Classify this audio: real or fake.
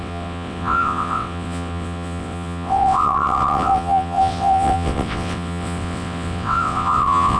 fake